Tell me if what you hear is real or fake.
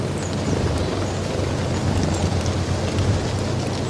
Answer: real